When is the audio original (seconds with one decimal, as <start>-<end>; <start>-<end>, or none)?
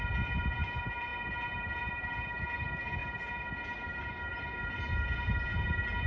0.0-6.1